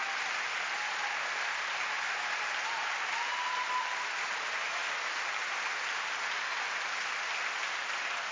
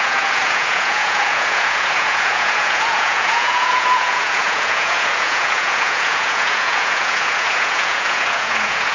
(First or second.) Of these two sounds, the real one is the first